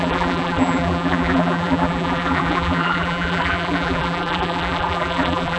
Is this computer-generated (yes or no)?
yes